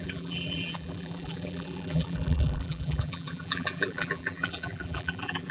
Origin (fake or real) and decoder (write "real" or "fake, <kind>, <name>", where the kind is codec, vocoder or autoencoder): fake, vocoder, BigVGAN v2